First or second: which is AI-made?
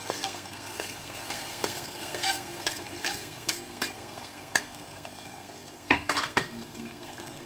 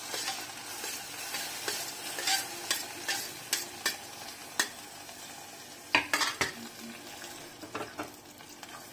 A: first